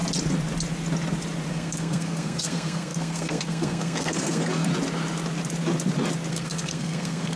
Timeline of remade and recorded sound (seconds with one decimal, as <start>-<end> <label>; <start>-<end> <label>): 0.0-1.5 recorded; 1.5-4.7 remade; 4.7-6.3 recorded; 6.3-7.4 remade